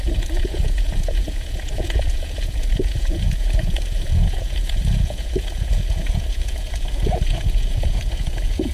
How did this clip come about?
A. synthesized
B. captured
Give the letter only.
A